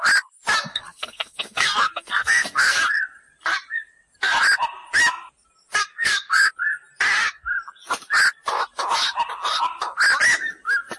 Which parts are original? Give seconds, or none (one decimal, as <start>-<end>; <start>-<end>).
0.0-0.7; 2.8-5.9; 6.5-11.0